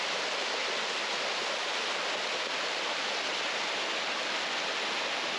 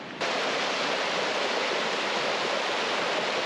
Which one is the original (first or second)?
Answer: first